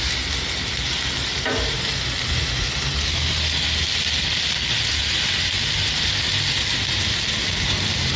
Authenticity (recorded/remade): recorded